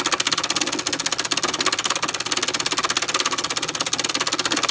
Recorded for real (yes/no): yes